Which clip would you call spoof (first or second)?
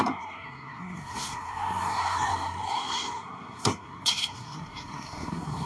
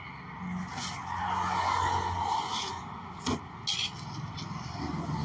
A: first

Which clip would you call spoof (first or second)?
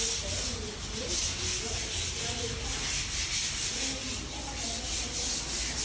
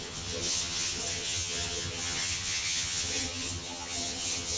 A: second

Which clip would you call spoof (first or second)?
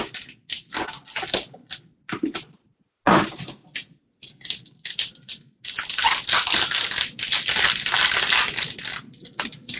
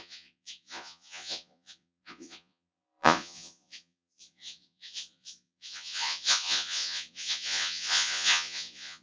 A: second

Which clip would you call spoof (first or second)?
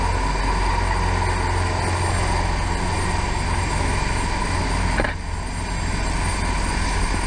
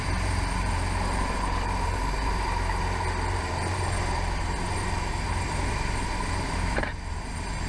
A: second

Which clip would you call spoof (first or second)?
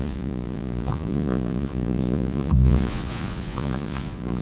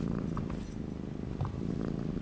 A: first